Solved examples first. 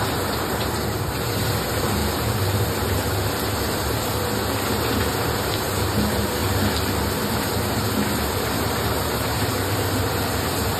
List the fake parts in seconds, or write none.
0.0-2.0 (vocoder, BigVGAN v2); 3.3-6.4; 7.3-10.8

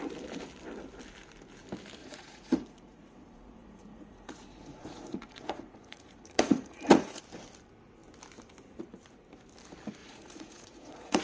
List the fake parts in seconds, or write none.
2.0-7.2 (vocoder, Vocos); 10.0-11.2

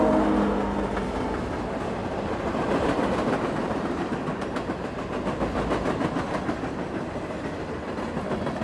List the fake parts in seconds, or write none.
2.0-4.7 (vocoder, BigVGAN v2)